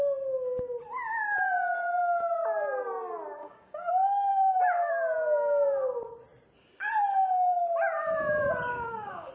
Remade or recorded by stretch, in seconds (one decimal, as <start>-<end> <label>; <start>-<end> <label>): 0.0-3.4 recorded; 3.4-3.9 remade; 3.9-4.3 recorded; 4.3-4.9 remade; 4.9-8.7 recorded; 8.7-9.3 remade